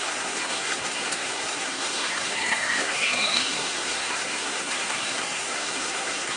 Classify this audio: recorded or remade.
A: remade